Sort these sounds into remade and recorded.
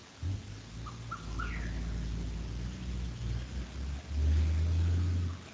recorded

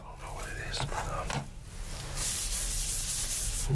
recorded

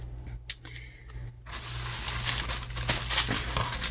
recorded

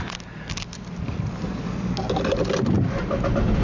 recorded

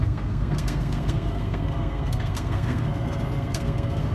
remade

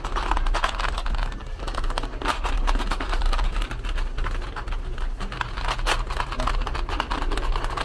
recorded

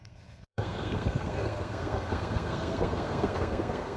remade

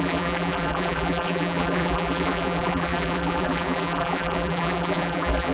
remade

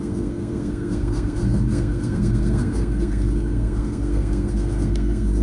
remade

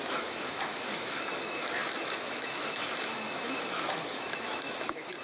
remade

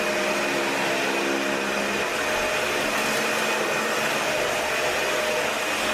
recorded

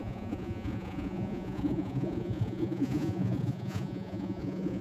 remade